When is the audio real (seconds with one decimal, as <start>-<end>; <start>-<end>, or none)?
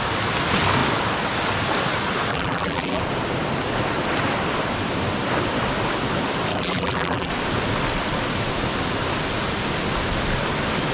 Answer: 0.0-2.3; 3.0-6.5; 7.3-10.9